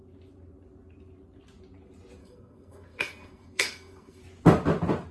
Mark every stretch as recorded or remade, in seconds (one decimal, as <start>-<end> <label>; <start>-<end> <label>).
0.0-2.2 recorded; 2.2-4.2 remade; 4.2-5.1 recorded